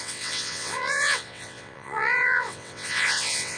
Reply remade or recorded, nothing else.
remade